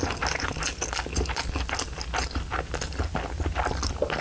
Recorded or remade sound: recorded